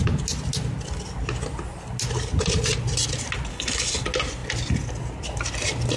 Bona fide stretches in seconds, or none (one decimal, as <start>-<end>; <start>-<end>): 0.0-3.5; 4.0-6.0